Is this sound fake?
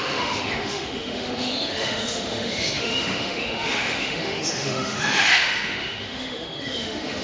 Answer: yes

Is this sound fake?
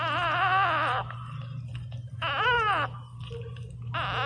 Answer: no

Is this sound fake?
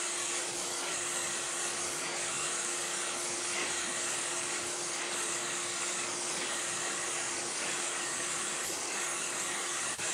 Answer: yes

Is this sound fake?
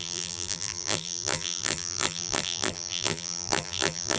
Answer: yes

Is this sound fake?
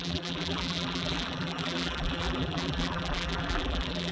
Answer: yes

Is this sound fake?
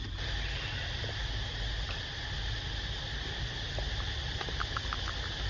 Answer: no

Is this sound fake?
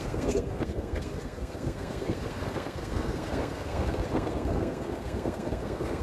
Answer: yes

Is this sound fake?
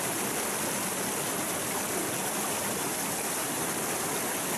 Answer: no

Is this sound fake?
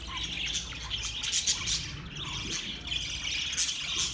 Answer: no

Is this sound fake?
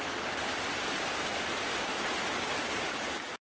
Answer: no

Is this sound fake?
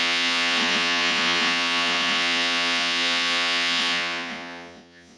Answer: yes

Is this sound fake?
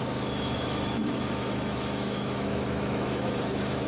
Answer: yes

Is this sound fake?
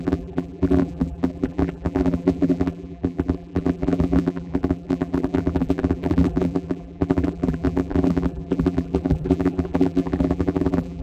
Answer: yes